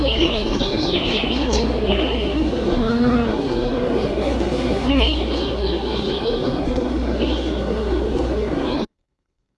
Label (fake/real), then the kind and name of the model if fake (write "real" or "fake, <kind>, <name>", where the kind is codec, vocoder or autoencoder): fake, codec, SNAC